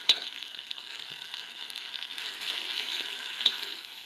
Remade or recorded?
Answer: remade